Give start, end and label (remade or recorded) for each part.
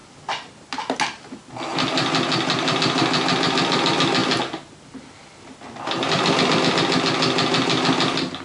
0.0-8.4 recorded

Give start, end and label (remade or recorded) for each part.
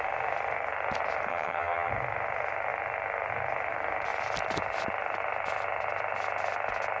0.0-1.3 recorded; 1.3-1.9 remade; 1.9-7.0 recorded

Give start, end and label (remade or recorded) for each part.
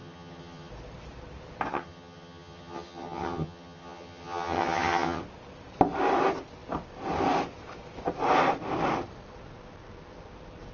0.0-0.7 remade; 0.7-1.7 recorded; 1.7-5.2 remade; 5.2-10.7 recorded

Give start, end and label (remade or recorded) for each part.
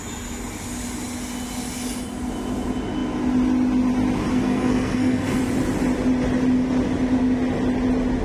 0.0-4.3 recorded; 4.3-5.4 remade; 5.4-8.2 recorded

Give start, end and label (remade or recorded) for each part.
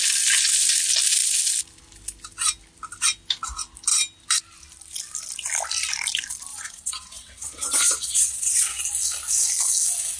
0.0-6.5 recorded; 6.5-8.8 remade; 8.8-10.2 recorded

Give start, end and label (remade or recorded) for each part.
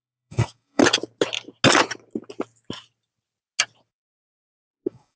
0.0-0.8 remade; 0.8-3.9 recorded; 3.9-5.2 remade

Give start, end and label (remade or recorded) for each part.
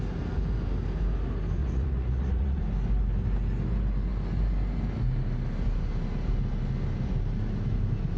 0.0-1.6 recorded; 1.6-2.6 remade; 2.6-8.2 recorded